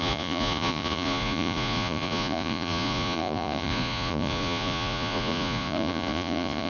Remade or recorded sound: remade